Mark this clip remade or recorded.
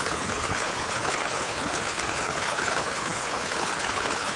remade